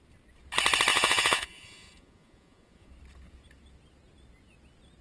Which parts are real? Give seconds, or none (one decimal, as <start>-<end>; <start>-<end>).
0.0-0.9; 2.9-5.0

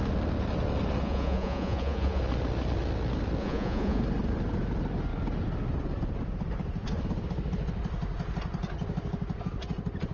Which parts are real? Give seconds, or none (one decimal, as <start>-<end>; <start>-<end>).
0.0-1.0; 2.2-3.4; 4.0-10.1

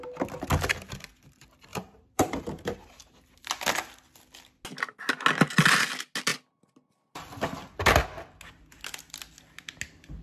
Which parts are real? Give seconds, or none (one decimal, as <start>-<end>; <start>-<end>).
0.0-1.7; 3.2-10.2

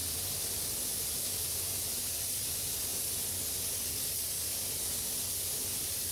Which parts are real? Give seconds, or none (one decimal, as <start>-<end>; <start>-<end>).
0.0-6.1

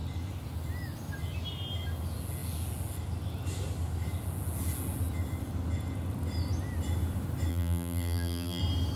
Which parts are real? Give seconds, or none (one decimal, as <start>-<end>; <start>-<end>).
0.0-7.5; 8.6-9.0

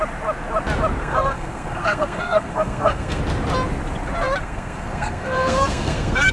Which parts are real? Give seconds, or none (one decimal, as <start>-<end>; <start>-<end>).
0.0-1.0; 3.2-4.4

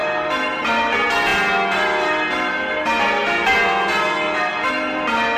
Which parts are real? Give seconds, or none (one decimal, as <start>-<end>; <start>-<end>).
0.0-5.4